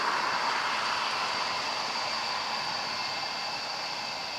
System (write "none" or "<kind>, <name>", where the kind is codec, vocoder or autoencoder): none